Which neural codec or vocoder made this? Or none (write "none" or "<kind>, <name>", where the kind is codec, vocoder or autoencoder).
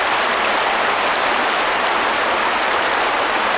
none